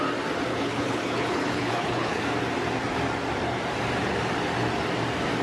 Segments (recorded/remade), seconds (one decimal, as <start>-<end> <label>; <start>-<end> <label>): 0.0-0.5 recorded; 0.5-2.2 remade; 2.2-5.4 recorded